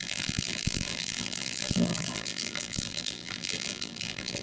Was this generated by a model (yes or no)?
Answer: yes